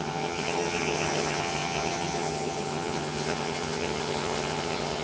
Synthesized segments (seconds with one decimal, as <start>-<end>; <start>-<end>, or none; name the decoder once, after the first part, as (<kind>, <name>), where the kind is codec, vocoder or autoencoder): 0.0-5.0 (vocoder, HiFi-GAN)